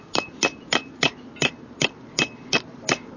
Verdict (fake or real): real